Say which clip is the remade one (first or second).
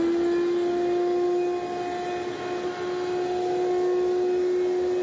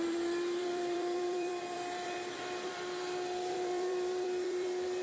second